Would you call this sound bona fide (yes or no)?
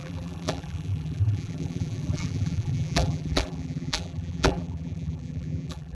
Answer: no